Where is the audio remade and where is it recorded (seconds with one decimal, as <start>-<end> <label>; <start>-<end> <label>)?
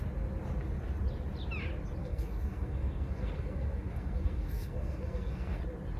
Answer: 0.0-2.0 recorded; 2.0-5.6 remade; 5.6-6.0 recorded